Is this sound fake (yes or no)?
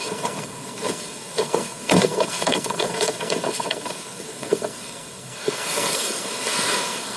yes